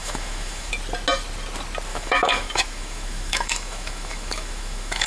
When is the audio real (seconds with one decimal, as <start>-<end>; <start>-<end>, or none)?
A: 0.7-1.9